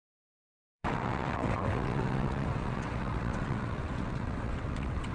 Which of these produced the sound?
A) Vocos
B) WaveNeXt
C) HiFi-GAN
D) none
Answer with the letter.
B